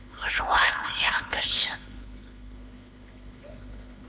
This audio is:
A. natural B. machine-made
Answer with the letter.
B